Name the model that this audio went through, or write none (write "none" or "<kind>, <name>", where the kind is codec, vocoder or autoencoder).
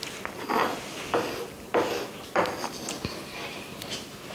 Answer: none